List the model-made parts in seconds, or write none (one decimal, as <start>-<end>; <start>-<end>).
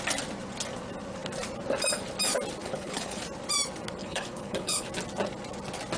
2.6-3.2; 4.0-4.8